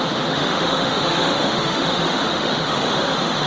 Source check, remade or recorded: remade